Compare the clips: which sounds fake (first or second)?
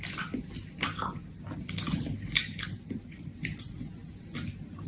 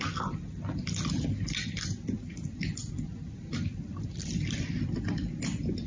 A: second